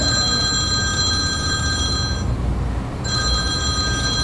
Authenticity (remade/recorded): recorded